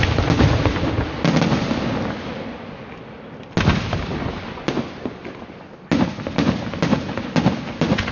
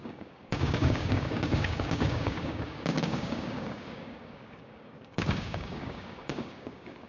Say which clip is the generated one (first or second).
second